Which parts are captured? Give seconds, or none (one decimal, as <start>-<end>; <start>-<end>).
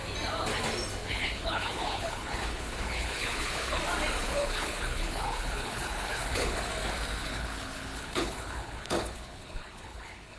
0.0-1.0; 3.8-4.2; 6.7-7.2